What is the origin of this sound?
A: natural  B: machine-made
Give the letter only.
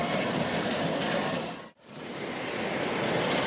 B